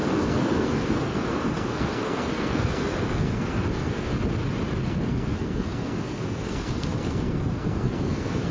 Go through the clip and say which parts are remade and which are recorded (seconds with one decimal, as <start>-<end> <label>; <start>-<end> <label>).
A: 0.0-4.1 remade; 4.1-4.8 recorded; 4.8-8.5 remade